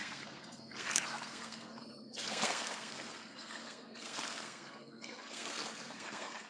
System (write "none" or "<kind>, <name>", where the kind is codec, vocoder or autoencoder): codec, SNAC